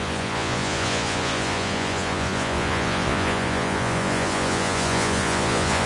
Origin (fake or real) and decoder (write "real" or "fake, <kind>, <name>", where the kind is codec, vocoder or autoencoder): fake, vocoder, Vocos